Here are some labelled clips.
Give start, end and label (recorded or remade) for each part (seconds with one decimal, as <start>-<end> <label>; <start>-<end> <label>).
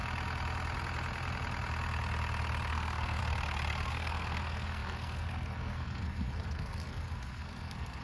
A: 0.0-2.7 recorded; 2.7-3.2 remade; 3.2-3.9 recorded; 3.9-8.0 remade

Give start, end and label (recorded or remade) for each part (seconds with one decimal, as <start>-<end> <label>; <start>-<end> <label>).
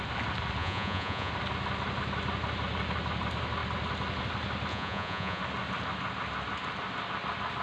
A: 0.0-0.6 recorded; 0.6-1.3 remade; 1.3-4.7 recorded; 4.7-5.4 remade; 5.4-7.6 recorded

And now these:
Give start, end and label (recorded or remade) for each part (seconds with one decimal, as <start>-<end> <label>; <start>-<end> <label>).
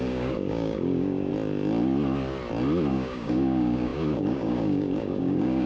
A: 0.0-1.3 remade; 1.3-2.9 recorded; 2.9-5.7 remade